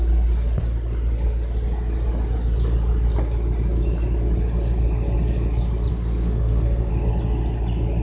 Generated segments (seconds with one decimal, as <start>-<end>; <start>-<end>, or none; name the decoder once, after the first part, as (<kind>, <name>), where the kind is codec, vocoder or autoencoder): 5.9-6.9 (codec, SNAC)